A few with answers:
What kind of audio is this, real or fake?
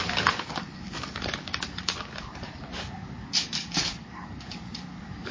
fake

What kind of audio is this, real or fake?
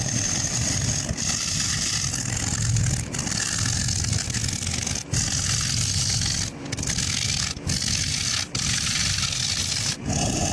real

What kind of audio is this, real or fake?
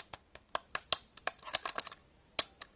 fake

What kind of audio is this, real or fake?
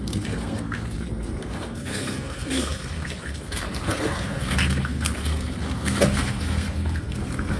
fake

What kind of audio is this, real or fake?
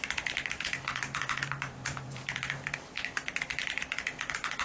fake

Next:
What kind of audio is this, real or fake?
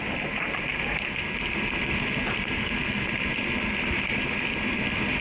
real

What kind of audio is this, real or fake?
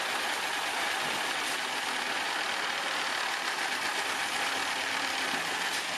real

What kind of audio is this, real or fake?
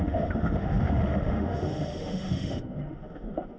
fake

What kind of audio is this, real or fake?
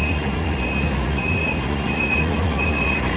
fake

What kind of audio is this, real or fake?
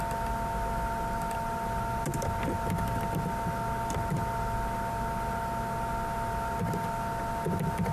real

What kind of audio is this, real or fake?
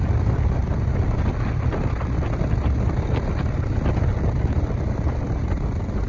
real